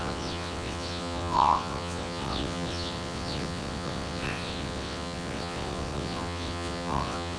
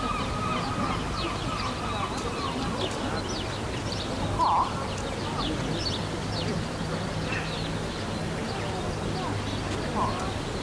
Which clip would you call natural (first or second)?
second